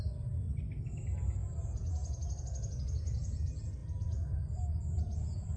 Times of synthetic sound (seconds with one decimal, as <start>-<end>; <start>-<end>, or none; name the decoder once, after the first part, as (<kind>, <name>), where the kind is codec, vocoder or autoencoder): none